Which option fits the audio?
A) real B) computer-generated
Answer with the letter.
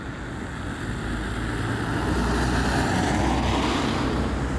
A